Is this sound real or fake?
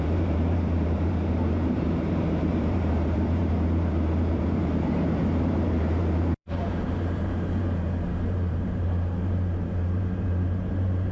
fake